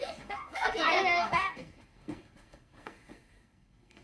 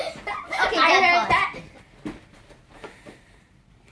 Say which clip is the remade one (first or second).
first